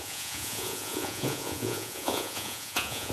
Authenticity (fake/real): fake